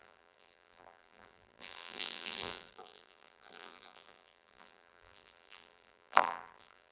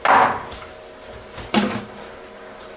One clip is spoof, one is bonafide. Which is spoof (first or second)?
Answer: first